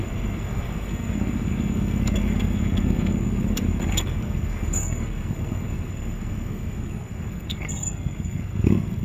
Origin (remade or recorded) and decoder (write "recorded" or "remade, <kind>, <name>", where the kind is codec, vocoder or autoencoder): remade, codec, SNAC